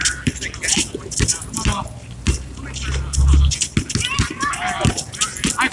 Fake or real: real